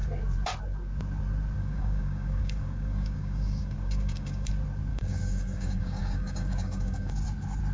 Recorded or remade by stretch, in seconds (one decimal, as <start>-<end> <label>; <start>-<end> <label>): 0.0-1.6 recorded; 1.6-4.5 remade; 4.5-4.9 recorded; 4.9-7.1 remade; 7.1-7.7 recorded